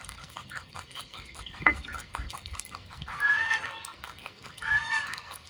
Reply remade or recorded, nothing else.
remade